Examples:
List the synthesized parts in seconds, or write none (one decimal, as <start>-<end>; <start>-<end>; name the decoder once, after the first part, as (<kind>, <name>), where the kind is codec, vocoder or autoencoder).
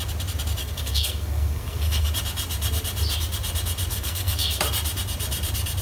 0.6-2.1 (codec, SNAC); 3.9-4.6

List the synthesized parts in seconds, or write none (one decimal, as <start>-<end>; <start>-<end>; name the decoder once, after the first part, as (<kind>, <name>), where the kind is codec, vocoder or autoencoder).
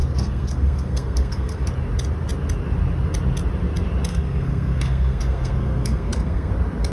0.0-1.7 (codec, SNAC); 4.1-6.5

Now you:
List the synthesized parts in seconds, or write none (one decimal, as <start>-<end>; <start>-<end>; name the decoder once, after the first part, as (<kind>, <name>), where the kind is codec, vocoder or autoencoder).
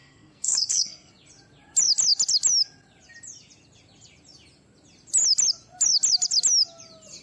0.0-1.1 (codec, SNAC)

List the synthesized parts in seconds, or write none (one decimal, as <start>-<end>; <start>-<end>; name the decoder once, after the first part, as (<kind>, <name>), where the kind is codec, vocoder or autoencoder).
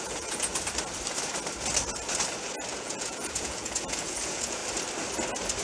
0.0-0.5 (vocoder, Vocos); 2.7-4.6